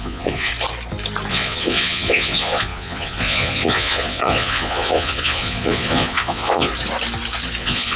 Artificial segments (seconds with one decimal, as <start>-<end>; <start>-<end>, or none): 0.0-0.5; 1.3-6.7; 7.6-8.0